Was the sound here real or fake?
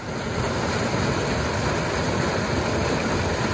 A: real